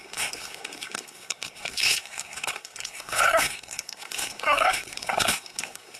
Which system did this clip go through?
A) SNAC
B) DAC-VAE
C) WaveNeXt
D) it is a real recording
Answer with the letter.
A